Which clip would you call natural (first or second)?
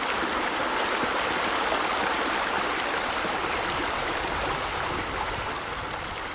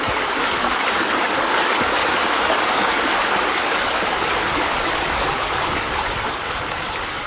first